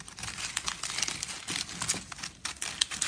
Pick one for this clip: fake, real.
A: real